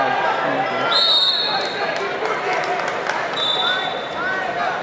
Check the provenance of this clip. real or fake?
real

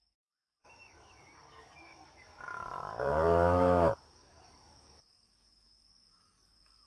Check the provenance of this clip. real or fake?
fake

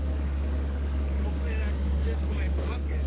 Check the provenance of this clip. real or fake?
fake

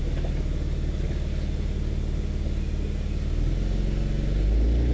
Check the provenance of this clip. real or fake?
real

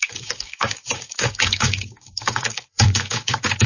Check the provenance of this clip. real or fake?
fake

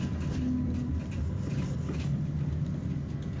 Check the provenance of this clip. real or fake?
real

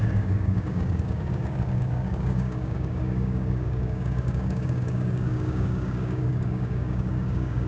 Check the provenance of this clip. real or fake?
fake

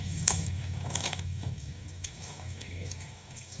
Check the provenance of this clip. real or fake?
fake